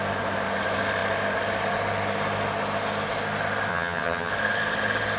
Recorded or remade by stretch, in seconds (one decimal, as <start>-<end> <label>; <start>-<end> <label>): 0.0-3.7 recorded; 3.7-4.3 remade; 4.3-5.2 recorded